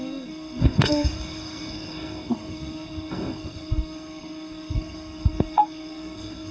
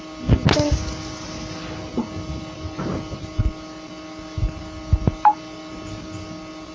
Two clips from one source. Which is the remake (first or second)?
first